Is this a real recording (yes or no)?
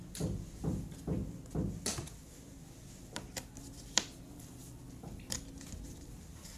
yes